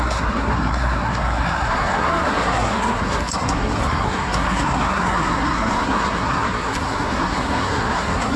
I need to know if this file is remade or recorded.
remade